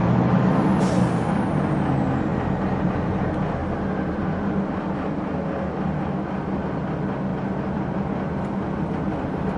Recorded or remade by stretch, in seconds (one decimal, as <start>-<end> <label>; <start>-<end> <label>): 0.0-2.3 recorded; 2.3-3.2 remade; 3.2-9.6 recorded